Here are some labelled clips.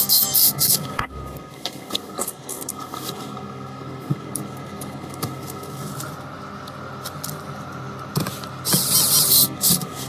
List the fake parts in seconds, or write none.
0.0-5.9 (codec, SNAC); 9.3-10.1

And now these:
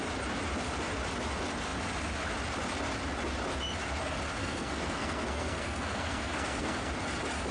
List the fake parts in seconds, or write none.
4.4-6.9 (codec, SNAC)

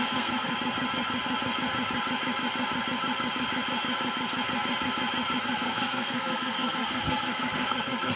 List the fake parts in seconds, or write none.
0.0-0.5 (codec, SNAC); 5.4-8.2

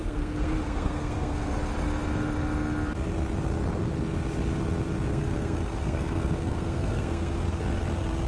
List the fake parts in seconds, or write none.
0.0-1.5 (codec, SNAC); 5.1-7.6